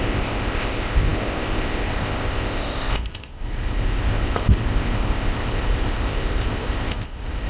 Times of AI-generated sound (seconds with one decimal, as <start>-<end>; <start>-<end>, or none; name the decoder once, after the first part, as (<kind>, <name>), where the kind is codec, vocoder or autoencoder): 0.0-7.5 (codec, ZipCodec)